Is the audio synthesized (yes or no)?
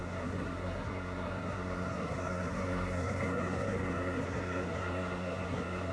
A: yes